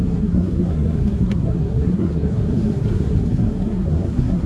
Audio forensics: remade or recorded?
remade